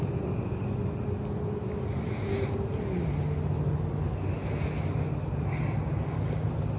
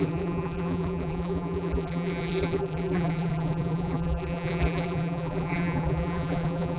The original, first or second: first